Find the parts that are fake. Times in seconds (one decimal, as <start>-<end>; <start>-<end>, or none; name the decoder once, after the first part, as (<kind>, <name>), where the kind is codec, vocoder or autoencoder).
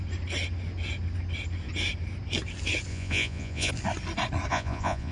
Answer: 2.9-3.7 (vocoder, Vocos); 4.5-5.1